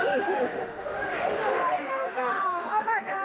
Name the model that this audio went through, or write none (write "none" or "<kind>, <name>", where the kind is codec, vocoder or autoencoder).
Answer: autoencoder, DAC-VAE